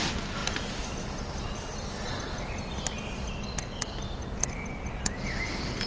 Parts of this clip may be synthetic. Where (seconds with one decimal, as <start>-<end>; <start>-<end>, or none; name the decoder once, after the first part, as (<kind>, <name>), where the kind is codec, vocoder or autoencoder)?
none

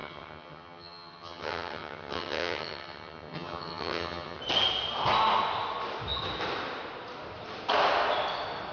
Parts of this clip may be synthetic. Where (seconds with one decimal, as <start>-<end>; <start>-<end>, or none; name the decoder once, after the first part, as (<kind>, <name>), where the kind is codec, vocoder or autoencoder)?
0.0-4.4 (vocoder, HiFi-GAN)

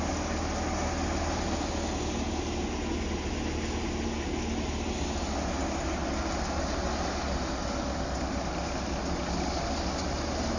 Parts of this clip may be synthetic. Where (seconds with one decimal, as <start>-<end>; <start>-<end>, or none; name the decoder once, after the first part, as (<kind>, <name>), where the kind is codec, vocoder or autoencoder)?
none

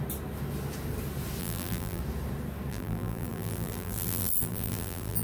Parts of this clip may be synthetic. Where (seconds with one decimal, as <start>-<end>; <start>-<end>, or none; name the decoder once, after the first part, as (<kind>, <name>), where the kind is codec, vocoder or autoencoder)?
1.4-2.0 (vocoder, BigVGAN v2); 2.7-5.2